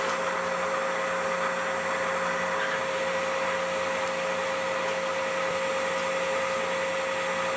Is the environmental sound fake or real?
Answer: real